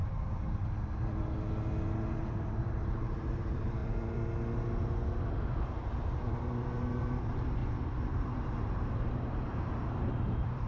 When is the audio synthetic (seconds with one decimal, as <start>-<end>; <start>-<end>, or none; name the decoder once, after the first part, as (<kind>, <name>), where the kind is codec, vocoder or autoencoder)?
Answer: 2.1-3.8 (vocoder, BigVGAN v2); 6.2-7.6; 8.2-10.7